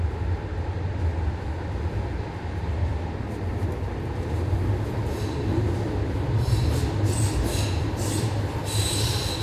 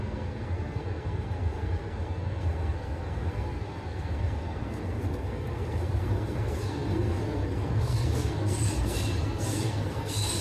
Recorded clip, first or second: first